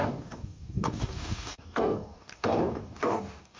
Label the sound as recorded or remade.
remade